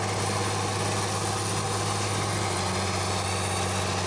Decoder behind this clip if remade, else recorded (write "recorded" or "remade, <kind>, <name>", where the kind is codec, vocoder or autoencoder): recorded